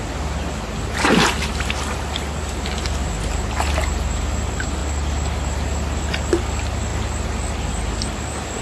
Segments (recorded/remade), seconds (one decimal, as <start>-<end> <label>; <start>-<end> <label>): 0.0-8.6 recorded